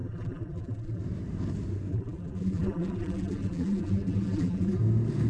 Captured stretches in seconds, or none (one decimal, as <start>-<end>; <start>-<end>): 1.0-1.9; 4.8-5.3